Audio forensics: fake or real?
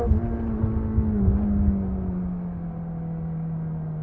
real